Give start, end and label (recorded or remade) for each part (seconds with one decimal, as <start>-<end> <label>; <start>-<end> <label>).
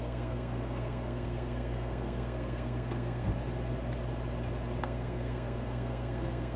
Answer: 0.0-3.3 remade; 3.3-4.8 recorded; 4.8-6.6 remade